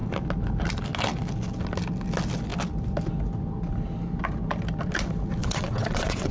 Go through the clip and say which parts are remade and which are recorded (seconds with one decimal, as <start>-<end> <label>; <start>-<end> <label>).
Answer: 0.0-5.4 recorded; 5.4-6.3 remade